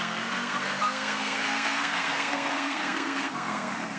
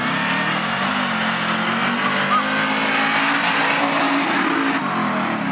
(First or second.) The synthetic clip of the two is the first